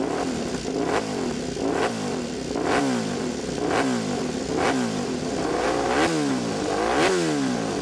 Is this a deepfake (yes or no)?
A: no